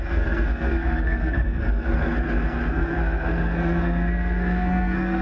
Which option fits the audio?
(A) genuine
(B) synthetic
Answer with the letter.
B